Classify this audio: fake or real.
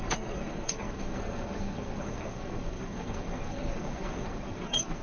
fake